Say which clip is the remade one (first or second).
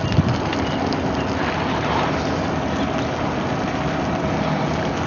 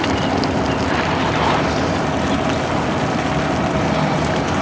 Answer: second